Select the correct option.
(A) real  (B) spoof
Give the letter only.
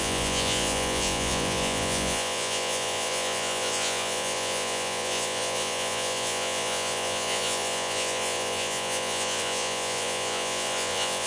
B